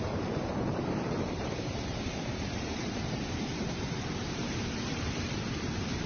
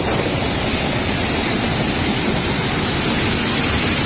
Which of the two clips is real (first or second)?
second